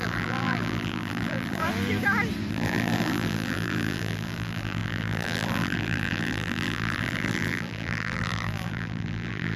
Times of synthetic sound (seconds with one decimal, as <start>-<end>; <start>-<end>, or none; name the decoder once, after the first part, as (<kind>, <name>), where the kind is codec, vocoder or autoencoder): 0.0-1.6 (vocoder, BigVGAN v2); 2.5-9.6